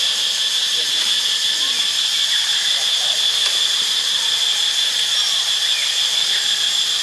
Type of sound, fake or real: fake